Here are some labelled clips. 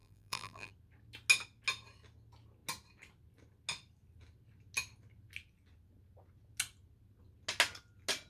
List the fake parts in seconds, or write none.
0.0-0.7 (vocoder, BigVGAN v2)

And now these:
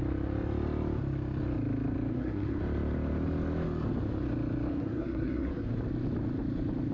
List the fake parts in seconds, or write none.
2.1-2.6 (codec, SNAC); 4.7-5.7

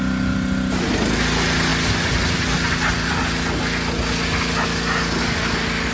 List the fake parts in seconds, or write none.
none

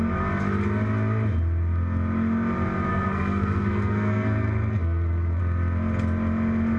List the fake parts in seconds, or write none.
2.9-5.4 (codec, SNAC)

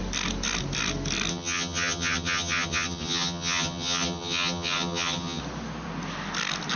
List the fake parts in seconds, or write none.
1.3-5.4 (vocoder, HiFi-GAN)

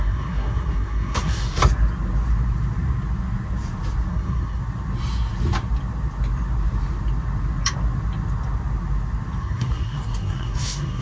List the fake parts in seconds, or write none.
0.0-1.6 (codec, SNAC); 4.1-4.6; 9.4-11.0

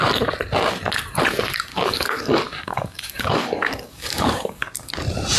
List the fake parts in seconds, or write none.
1.7-4.9 (codec, DAC)

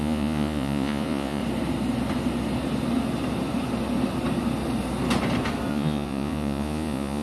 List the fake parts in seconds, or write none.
0.0-1.4 (vocoder, Vocos); 5.7-7.2